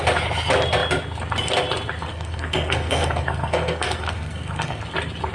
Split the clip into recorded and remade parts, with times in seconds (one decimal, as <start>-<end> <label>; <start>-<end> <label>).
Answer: 0.0-2.1 recorded; 2.1-4.8 remade; 4.8-5.3 recorded